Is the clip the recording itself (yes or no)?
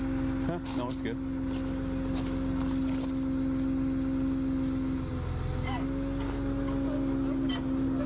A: yes